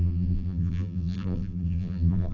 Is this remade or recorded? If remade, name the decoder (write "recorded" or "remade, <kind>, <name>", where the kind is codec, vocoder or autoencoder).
remade, vocoder, BigVGAN v2